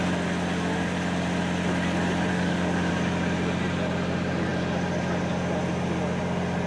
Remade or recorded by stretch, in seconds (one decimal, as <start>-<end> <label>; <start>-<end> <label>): 0.0-2.3 recorded; 2.3-2.9 remade; 2.9-6.7 recorded